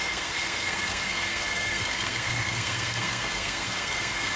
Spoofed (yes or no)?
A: yes